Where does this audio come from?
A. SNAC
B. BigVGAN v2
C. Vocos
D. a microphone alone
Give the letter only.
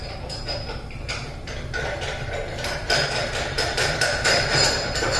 B